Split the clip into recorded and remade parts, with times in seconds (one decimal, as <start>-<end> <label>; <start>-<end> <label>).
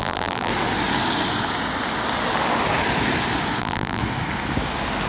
0.0-0.5 remade; 0.5-3.6 recorded; 3.6-4.0 remade; 4.0-5.1 recorded